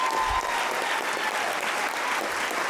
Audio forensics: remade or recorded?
recorded